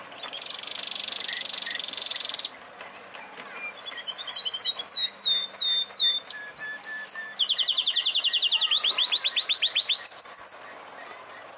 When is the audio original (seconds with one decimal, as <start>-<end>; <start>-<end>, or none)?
0.0-11.6